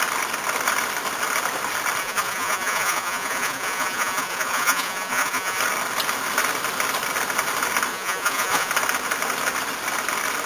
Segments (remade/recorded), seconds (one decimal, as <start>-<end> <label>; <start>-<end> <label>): 0.0-2.0 recorded; 2.0-5.6 remade; 5.6-7.9 recorded; 7.9-8.7 remade; 8.7-10.5 recorded